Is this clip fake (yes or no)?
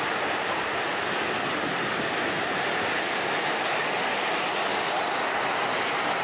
no